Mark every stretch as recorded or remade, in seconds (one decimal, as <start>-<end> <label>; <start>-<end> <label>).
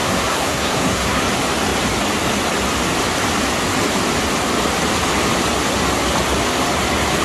0.0-1.2 remade; 1.2-7.2 recorded